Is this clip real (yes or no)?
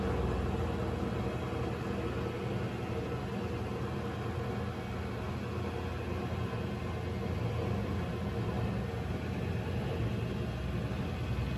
yes